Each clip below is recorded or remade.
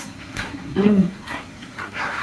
remade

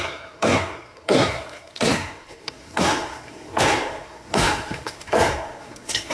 remade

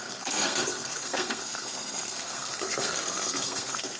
remade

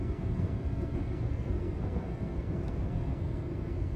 remade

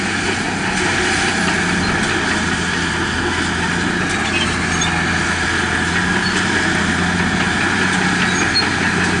recorded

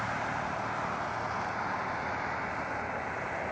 recorded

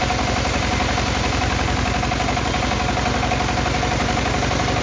recorded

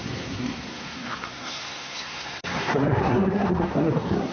remade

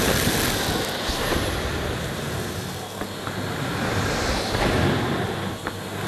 recorded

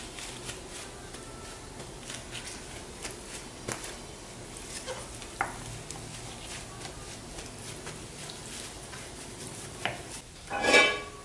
recorded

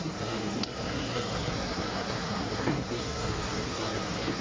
remade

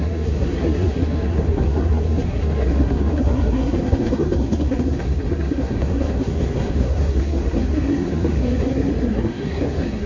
remade